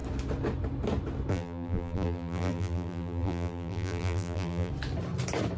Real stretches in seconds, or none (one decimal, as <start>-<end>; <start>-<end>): 0.0-1.3; 4.7-5.6